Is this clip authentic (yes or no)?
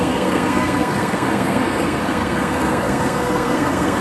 no